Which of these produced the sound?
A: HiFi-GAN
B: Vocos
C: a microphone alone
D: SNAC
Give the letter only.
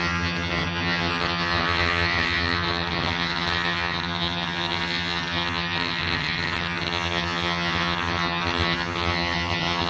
A